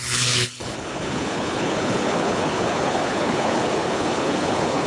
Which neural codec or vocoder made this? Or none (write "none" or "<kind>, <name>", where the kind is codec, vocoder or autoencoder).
codec, HILCodec